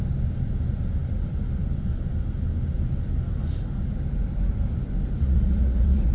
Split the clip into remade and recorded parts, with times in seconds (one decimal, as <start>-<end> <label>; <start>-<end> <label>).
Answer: 0.0-5.2 recorded; 5.2-6.1 remade